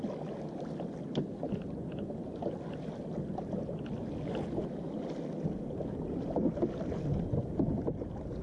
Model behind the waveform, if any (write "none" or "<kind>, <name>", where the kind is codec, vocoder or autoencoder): none